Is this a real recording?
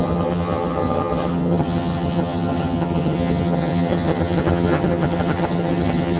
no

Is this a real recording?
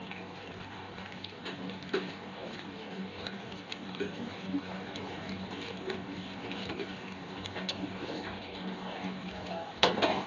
no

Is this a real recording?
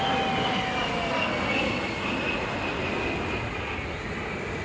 yes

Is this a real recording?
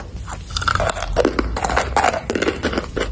yes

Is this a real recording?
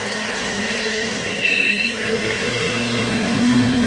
no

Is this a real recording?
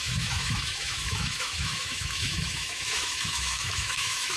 no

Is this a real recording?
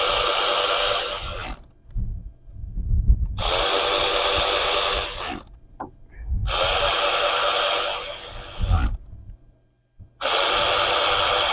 yes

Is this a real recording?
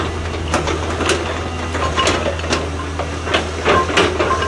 yes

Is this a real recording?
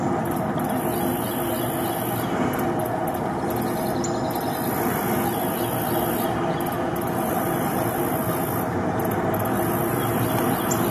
yes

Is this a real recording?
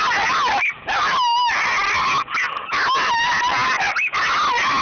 yes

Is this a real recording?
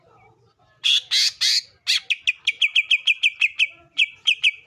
yes